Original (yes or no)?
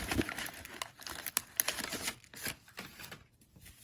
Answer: yes